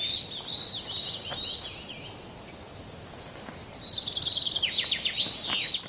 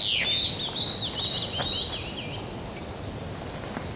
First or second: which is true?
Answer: second